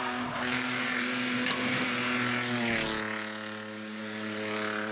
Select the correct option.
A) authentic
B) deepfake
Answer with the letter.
A